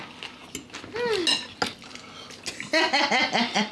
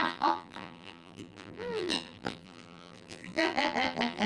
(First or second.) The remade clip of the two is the second